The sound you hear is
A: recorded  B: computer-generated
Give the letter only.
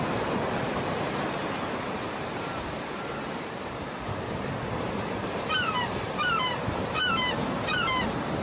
B